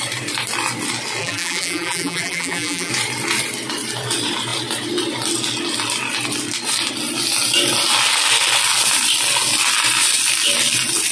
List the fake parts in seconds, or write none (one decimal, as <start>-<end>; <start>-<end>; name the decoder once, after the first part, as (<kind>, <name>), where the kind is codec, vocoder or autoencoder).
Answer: 1.2-2.9 (vocoder, BigVGAN v2)